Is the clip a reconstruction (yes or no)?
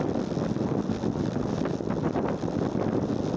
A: no